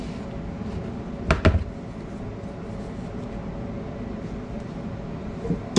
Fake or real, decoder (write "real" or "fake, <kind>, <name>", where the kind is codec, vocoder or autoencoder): real